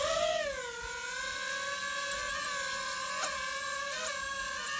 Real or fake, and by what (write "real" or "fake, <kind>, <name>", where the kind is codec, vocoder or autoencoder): real